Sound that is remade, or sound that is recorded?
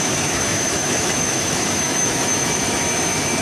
remade